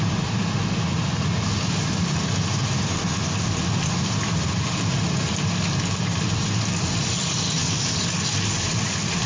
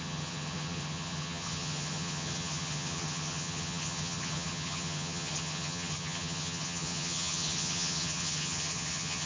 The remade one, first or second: second